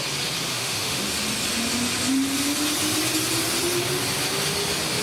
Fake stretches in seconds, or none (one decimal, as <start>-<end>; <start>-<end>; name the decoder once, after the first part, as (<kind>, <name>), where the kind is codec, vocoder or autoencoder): 0.5-1.0 (autoencoder, DAC-VAE)